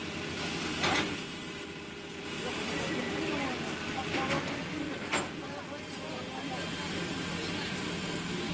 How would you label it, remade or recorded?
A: recorded